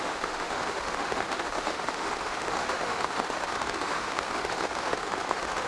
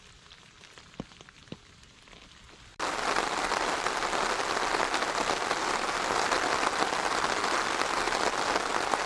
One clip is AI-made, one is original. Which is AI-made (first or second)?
first